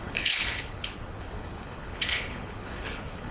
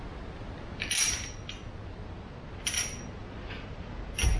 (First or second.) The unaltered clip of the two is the second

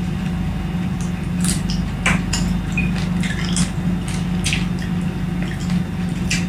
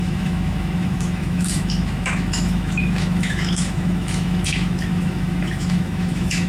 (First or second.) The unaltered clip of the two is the first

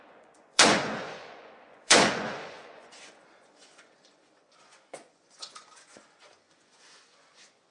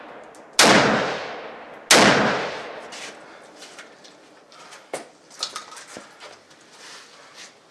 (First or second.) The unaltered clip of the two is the second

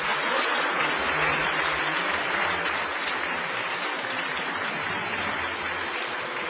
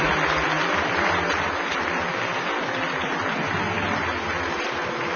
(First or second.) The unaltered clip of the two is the second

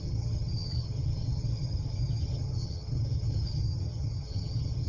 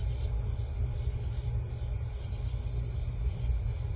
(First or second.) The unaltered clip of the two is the second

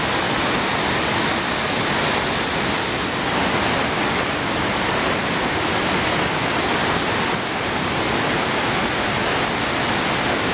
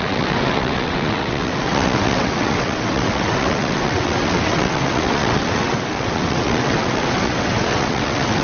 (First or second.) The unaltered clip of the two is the first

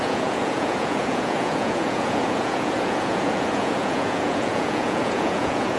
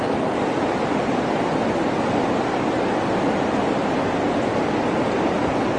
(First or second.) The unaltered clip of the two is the second